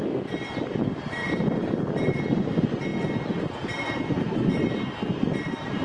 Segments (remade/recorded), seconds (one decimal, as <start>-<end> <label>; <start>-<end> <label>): 0.0-1.2 recorded; 1.2-1.9 remade; 1.9-5.8 recorded